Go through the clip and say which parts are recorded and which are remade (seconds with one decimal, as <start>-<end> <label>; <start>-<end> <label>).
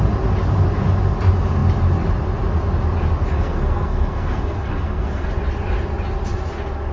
0.0-3.3 recorded; 3.3-5.3 remade; 5.3-6.9 recorded